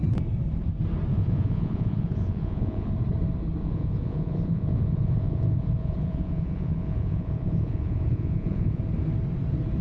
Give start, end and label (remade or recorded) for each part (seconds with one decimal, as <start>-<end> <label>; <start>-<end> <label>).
0.0-1.1 recorded; 1.1-2.9 remade; 2.9-3.6 recorded; 3.6-8.8 remade; 8.8-9.8 recorded